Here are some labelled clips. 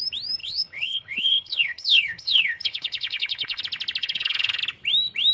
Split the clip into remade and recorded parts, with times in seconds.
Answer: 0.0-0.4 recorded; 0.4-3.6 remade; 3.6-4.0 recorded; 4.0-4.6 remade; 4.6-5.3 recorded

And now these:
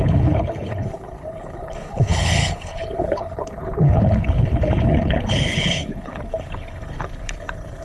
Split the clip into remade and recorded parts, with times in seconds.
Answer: 0.0-7.8 remade

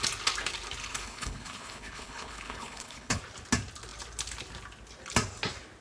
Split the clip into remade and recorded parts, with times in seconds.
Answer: 0.0-0.8 recorded; 0.8-3.2 remade; 3.2-5.8 recorded

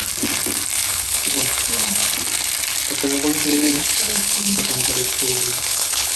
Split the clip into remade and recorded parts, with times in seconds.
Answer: 0.0-0.9 recorded; 0.9-2.1 remade; 2.1-3.5 recorded; 3.5-6.2 remade

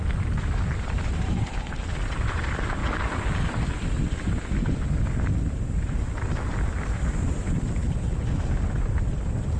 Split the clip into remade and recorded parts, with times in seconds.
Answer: 0.0-1.4 recorded; 1.4-1.9 remade; 1.9-7.8 recorded; 7.8-8.4 remade; 8.4-9.6 recorded